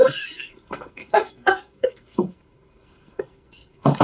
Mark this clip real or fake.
fake